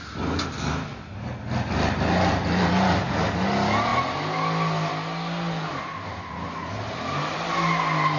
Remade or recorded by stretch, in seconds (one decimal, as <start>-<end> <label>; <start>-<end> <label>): 0.0-8.2 recorded